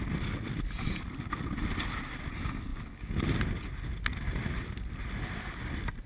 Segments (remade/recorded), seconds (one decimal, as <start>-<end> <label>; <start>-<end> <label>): 0.0-6.1 recorded